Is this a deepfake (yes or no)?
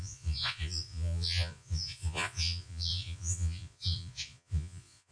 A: yes